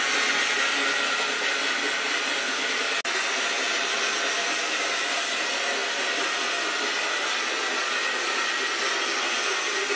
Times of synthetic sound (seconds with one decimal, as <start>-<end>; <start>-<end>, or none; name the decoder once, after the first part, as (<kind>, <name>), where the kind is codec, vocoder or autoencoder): none